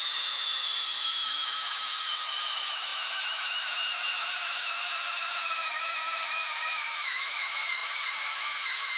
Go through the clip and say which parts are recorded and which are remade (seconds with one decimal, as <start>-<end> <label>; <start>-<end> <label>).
0.0-9.0 remade